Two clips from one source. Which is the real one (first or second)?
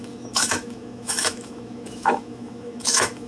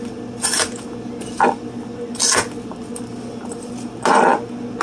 second